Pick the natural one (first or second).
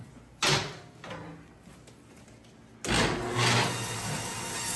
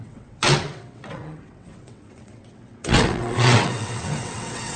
first